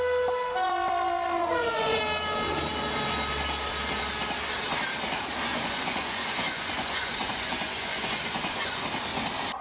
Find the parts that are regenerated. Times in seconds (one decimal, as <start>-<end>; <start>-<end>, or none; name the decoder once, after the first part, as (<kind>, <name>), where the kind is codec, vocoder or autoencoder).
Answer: 1.4-2.0 (vocoder, Vocos); 5.5-8.8